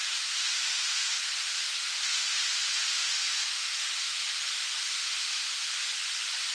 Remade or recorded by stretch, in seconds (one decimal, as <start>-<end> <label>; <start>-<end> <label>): 0.0-2.4 remade; 2.4-2.9 recorded; 2.9-5.7 remade; 5.7-6.5 recorded